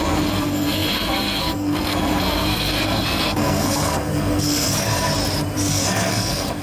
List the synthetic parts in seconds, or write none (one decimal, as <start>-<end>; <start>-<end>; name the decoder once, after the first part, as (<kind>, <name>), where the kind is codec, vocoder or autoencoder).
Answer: 0.0-5.1 (codec, SNAC); 5.7-6.6